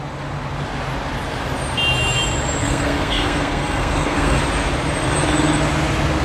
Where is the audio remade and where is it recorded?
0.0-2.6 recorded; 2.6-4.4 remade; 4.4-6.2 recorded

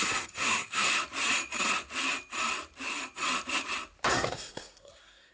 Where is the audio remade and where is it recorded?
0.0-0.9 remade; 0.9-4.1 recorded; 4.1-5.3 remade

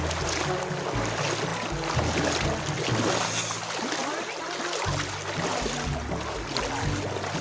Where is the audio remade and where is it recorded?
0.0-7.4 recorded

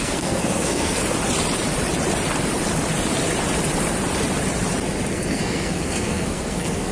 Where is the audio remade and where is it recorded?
0.0-1.0 remade; 1.0-5.1 recorded; 5.1-6.9 remade

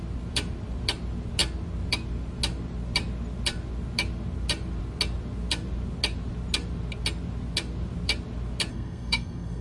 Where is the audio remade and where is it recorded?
0.0-8.7 recorded; 8.7-9.6 remade

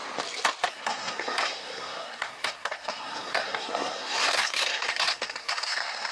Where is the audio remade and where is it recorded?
0.0-0.7 recorded; 0.7-6.1 remade

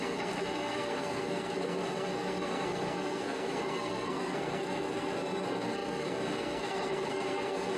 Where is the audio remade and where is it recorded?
0.0-7.8 remade